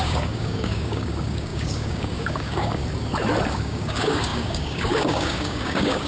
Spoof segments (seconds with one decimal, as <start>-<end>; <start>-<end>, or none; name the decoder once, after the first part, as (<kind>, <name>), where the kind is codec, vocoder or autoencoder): 0.0-2.8 (codec, DAC); 3.5-6.1